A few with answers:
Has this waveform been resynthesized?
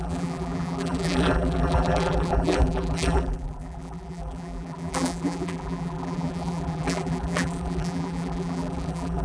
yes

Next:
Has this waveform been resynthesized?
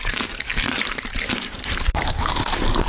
yes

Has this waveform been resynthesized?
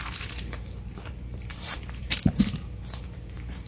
yes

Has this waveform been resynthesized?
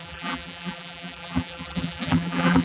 yes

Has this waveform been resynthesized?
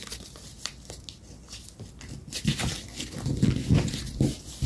no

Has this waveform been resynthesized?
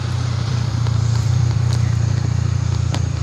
yes